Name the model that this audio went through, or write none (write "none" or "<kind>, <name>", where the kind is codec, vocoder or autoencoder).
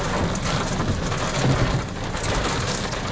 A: none